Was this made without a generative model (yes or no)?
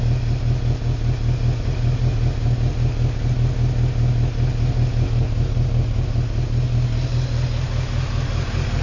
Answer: yes